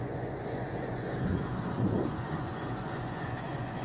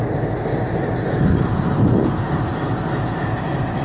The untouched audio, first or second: second